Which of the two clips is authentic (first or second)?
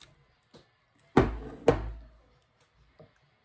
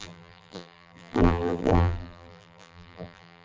first